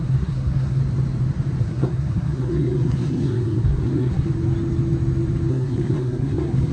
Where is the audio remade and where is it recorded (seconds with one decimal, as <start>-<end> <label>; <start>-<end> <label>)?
0.0-0.8 remade; 0.8-1.6 recorded; 1.6-4.3 remade; 4.3-5.5 recorded; 5.5-6.7 remade